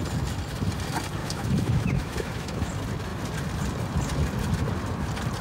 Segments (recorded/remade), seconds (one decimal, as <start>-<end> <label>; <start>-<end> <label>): 0.0-1.2 recorded; 1.2-2.7 remade; 2.7-5.4 recorded